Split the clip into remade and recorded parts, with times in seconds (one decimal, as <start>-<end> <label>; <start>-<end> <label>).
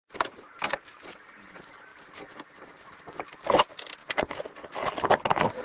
0.0-1.2 remade; 1.2-1.9 recorded; 1.9-2.8 remade; 2.8-5.6 recorded